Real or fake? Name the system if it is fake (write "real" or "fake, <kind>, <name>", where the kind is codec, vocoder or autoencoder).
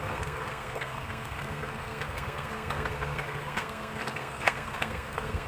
fake, codec, SNAC